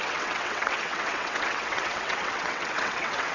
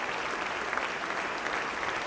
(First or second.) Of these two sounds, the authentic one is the second